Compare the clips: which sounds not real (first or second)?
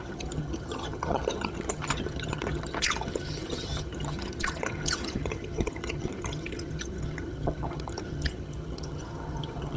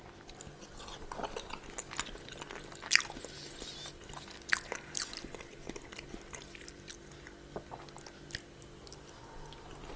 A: first